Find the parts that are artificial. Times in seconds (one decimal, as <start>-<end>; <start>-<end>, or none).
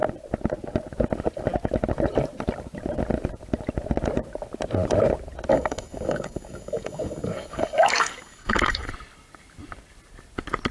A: 5.5-8.9